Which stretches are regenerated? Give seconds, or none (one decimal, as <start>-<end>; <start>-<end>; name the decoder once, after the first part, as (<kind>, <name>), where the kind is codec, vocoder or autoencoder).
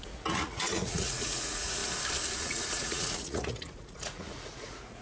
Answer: 0.0-1.8 (vocoder, Vocos); 2.4-5.0